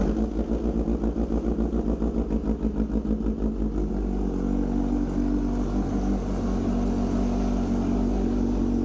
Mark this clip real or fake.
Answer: real